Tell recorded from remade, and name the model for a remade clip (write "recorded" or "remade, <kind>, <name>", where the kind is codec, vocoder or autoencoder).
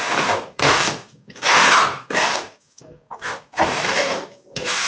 remade, codec, DAC